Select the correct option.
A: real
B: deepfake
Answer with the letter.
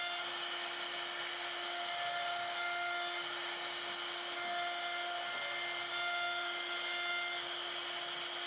A